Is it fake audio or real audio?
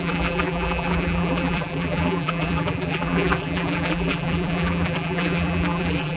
fake